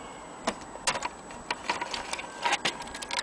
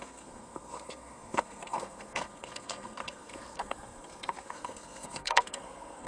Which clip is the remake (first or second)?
second